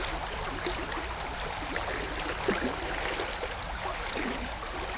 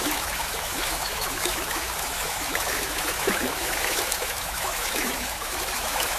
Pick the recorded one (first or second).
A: first